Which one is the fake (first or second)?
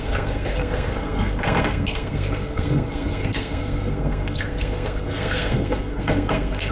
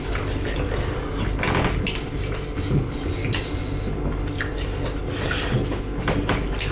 first